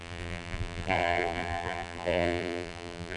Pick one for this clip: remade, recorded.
remade